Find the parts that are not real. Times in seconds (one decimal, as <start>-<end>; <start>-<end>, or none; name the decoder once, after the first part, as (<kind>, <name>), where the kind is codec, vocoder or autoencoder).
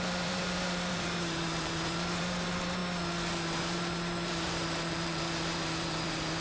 0.0-2.8 (vocoder, BigVGAN v2); 3.6-6.4